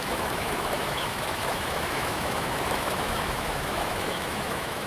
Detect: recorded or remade remade